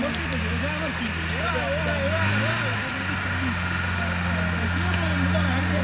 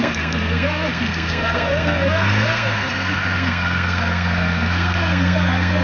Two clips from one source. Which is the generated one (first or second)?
second